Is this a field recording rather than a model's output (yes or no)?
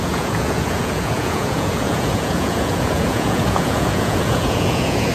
no